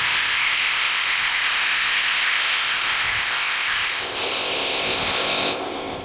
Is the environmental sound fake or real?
fake